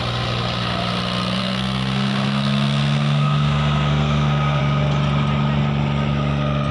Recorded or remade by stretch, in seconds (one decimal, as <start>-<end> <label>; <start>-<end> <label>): 0.0-1.4 recorded; 1.4-4.6 remade; 4.6-6.7 recorded